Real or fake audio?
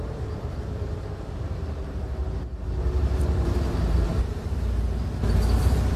fake